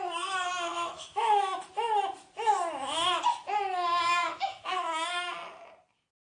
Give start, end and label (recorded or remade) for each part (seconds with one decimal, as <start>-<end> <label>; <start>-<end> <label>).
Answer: 0.0-0.7 recorded; 0.7-1.6 remade; 1.6-4.2 recorded; 4.2-5.1 remade; 5.1-6.3 recorded